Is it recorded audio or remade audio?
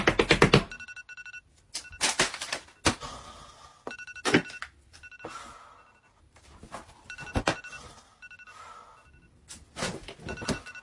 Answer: recorded